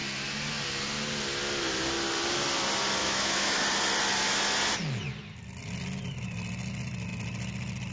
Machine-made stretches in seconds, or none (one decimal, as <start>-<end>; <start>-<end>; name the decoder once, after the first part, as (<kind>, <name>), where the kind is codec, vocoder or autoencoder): 3.0-3.6 (autoencoder, DAC-VAE)